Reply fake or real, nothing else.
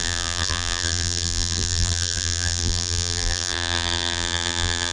fake